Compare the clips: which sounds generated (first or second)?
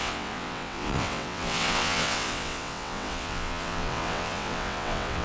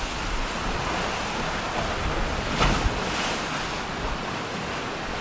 first